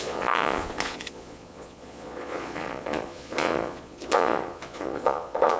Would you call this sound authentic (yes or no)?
no